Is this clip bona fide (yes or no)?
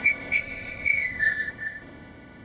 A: no